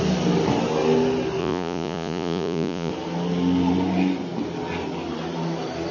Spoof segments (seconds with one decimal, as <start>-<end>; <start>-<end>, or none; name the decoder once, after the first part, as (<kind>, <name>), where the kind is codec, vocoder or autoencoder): 1.4-2.9 (vocoder, Vocos)